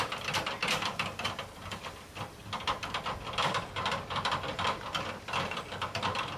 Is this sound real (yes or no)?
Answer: no